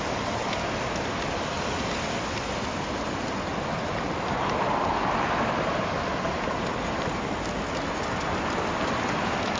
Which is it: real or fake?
real